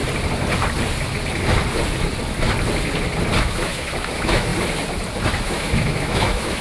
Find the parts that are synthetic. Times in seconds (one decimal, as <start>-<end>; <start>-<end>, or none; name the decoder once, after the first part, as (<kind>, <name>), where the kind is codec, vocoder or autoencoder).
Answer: 3.4-4.5 (autoencoder, DAC-VAE); 5.4-6.6